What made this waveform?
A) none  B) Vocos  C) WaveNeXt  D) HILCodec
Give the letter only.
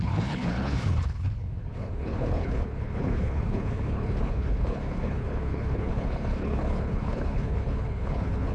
D